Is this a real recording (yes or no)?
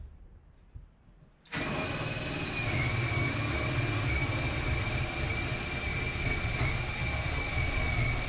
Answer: yes